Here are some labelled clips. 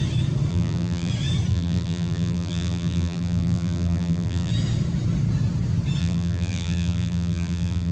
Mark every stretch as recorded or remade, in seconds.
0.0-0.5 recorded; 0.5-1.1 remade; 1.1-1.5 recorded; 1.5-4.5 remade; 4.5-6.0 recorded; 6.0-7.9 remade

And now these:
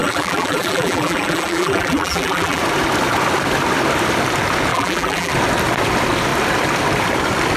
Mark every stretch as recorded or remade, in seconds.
0.0-2.6 remade; 2.6-4.7 recorded; 4.7-5.3 remade; 5.3-7.6 recorded

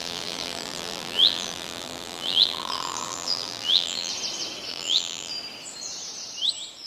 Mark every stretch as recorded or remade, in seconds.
0.0-4.1 remade; 4.1-4.7 recorded; 4.7-5.3 remade; 5.3-6.9 recorded

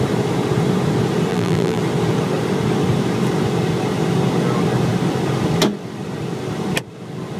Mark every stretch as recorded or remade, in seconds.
0.0-1.3 recorded; 1.3-1.8 remade; 1.8-7.4 recorded

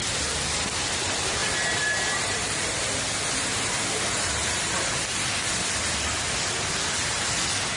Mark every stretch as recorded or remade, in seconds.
0.0-7.8 recorded

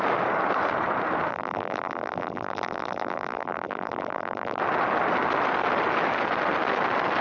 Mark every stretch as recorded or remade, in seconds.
0.0-1.3 recorded; 1.3-4.6 remade; 4.6-7.2 recorded

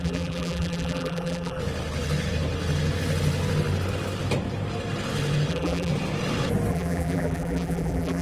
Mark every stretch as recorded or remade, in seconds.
0.0-1.6 remade; 1.6-5.5 recorded; 5.5-5.9 remade; 5.9-6.7 recorded; 6.7-8.2 remade

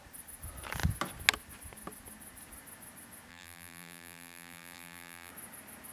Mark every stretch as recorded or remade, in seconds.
0.0-3.3 recorded; 3.3-5.3 remade; 5.3-5.9 recorded